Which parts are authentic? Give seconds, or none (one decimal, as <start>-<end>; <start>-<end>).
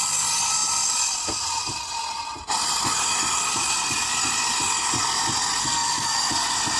0.0-5.6; 6.3-6.8